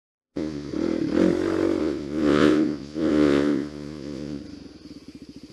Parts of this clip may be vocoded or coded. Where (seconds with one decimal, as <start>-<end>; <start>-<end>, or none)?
0.0-0.7; 1.8-4.4